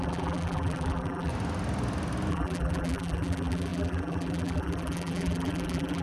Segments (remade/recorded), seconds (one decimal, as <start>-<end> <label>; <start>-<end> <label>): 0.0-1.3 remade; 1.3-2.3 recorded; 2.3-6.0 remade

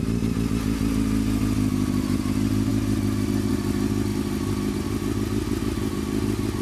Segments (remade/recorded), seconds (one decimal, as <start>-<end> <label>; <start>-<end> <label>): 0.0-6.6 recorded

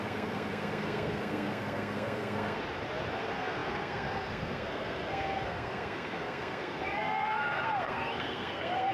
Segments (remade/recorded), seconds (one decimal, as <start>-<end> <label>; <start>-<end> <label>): 0.0-2.6 remade; 2.6-3.2 recorded; 3.2-8.9 remade

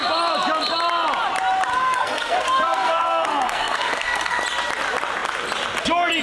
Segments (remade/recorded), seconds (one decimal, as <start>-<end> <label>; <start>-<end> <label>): 0.0-1.7 recorded; 1.7-4.4 remade; 4.4-6.2 recorded

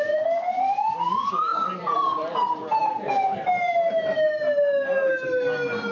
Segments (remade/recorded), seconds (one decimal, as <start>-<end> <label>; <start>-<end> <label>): 0.0-1.5 recorded; 1.5-3.1 remade; 3.1-5.9 recorded

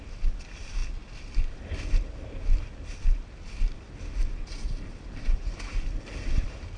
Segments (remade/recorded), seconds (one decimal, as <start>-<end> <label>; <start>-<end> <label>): 0.0-6.8 recorded

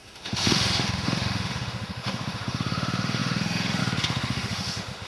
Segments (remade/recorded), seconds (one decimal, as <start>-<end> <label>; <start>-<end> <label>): 0.0-5.1 remade

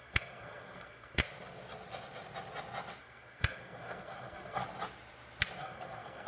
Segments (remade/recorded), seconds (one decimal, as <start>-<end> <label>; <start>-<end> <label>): 0.0-1.2 remade; 1.2-3.0 recorded; 3.0-4.6 remade; 4.6-5.6 recorded; 5.6-6.3 remade